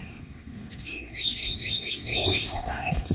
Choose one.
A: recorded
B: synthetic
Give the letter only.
B